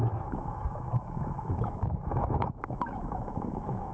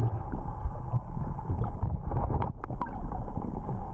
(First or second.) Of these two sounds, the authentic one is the second